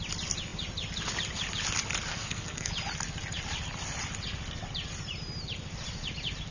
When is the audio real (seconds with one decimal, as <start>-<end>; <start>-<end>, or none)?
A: 0.0-2.1; 2.7-6.5